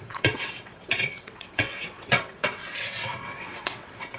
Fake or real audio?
fake